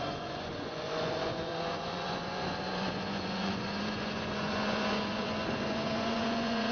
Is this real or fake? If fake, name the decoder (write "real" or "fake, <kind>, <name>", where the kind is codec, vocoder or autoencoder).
fake, vocoder, Vocos